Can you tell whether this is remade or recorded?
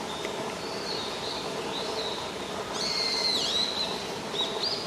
recorded